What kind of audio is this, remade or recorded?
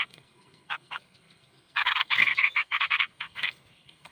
remade